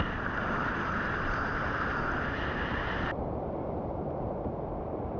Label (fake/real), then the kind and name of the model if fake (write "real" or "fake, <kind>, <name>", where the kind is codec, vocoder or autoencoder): fake, vocoder, BigVGAN v2